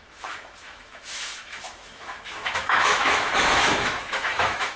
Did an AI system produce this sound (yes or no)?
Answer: yes